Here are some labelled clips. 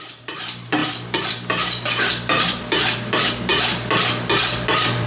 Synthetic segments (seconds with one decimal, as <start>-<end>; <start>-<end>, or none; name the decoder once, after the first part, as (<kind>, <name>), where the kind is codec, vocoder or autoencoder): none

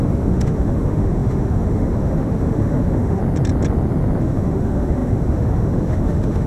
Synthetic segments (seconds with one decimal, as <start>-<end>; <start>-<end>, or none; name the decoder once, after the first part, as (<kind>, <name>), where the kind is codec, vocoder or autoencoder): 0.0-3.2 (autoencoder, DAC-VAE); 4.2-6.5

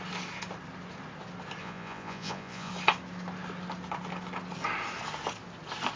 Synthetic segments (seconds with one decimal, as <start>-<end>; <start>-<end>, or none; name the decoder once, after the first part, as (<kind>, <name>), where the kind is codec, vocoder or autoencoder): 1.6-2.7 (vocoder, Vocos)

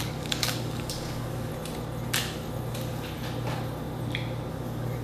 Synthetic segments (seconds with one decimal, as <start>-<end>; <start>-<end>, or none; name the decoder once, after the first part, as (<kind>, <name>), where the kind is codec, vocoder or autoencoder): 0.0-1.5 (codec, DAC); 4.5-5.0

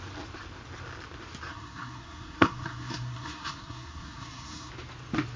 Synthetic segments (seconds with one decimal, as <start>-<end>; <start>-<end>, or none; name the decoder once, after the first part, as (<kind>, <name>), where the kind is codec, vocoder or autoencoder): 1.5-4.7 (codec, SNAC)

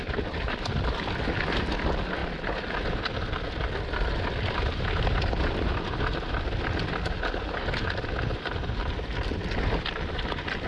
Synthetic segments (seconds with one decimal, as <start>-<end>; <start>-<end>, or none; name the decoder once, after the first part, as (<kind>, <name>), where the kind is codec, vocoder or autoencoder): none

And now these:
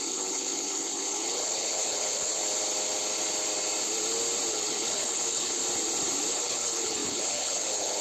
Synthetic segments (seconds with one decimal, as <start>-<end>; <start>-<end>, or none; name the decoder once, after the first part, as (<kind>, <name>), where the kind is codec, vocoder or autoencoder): 0.0-2.4 (codec, HILCodec); 4.5-5.6; 6.3-8.0

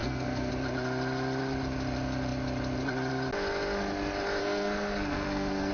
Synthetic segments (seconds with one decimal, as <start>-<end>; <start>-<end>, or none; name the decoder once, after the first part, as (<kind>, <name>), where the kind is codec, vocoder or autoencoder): 0.0-0.5 (codec, SNAC); 4.4-5.7